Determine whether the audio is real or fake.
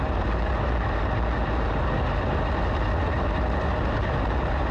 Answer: real